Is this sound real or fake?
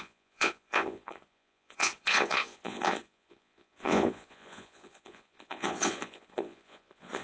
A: fake